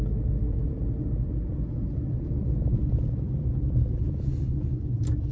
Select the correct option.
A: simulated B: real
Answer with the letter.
B